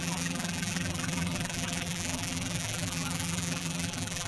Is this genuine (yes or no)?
no